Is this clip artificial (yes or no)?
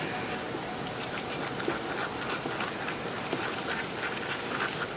no